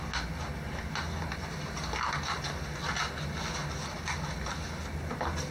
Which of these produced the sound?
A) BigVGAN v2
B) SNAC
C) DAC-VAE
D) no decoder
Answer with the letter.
D